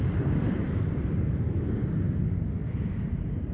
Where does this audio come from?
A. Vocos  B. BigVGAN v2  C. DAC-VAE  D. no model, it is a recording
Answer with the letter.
D